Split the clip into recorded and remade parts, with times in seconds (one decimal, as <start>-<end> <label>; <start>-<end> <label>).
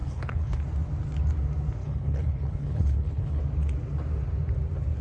0.0-0.6 remade; 0.6-1.8 recorded; 1.8-3.4 remade; 3.4-5.0 recorded